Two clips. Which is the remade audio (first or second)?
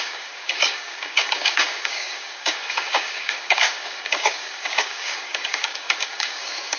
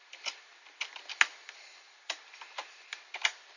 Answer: first